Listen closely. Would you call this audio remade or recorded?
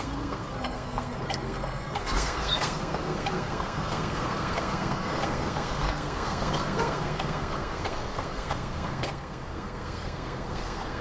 remade